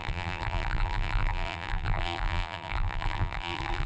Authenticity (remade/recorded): remade